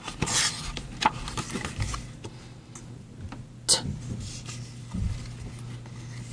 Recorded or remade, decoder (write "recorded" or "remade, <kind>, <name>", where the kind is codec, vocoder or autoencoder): recorded